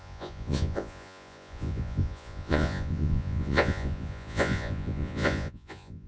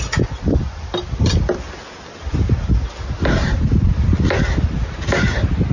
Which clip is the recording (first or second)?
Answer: second